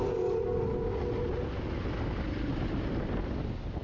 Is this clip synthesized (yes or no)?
no